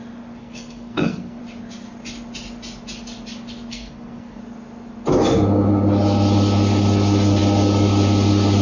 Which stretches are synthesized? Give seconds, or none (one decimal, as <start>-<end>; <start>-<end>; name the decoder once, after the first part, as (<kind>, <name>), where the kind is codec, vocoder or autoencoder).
0.4-1.4 (codec, SNAC); 3.7-4.4